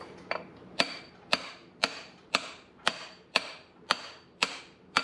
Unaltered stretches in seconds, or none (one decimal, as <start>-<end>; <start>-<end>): none